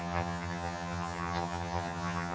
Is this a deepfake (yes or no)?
yes